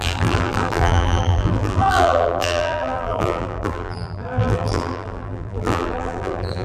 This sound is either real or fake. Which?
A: fake